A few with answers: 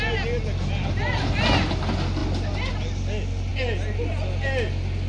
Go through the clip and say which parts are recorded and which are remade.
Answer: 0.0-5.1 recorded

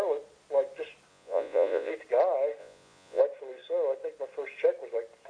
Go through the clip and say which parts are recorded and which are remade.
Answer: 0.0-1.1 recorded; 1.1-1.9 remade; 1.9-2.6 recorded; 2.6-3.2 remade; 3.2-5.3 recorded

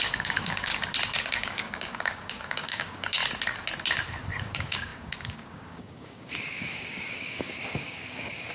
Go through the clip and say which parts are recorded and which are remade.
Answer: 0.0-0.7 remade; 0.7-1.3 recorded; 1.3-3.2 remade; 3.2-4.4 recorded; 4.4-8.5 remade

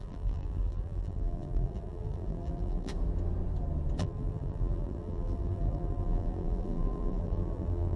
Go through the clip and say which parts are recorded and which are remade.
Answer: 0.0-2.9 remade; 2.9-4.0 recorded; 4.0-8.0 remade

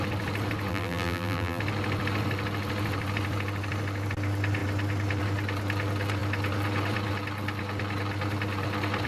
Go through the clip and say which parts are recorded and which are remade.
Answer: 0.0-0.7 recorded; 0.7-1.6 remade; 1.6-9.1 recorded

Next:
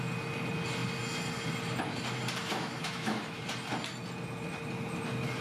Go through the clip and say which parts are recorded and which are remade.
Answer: 0.0-2.4 recorded; 2.4-3.4 remade; 3.4-5.4 recorded